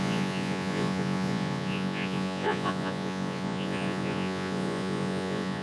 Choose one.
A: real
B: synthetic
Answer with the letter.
B